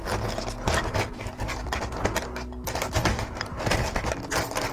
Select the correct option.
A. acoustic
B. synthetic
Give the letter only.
A